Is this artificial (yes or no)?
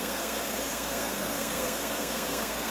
yes